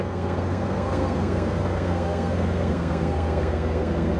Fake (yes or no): yes